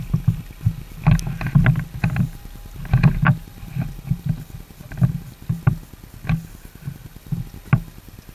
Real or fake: real